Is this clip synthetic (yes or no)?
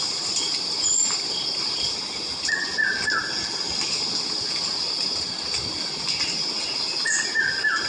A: no